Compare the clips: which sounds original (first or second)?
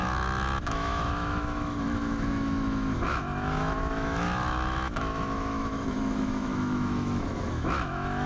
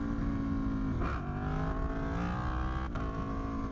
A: second